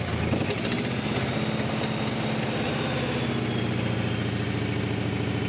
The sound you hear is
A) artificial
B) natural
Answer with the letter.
B